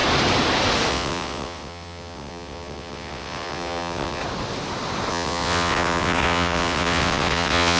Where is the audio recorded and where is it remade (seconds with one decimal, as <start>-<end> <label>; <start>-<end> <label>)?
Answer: 0.0-0.9 recorded; 0.9-4.2 remade; 4.2-5.1 recorded; 5.1-7.8 remade